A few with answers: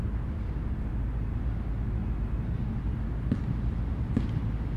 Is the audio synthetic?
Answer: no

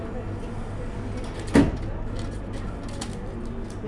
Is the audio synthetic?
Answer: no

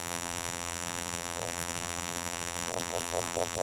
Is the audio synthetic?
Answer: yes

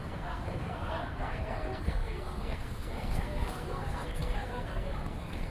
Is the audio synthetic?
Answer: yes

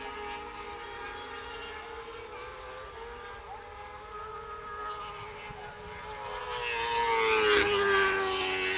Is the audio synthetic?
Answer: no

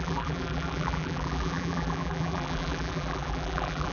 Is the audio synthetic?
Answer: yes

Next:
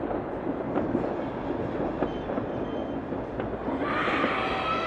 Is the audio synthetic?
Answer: no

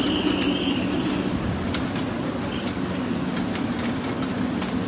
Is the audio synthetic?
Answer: no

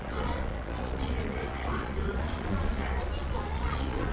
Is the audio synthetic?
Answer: yes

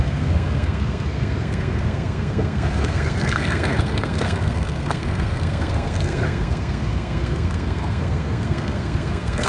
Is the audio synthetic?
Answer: yes